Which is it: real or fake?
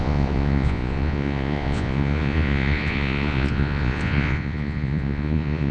fake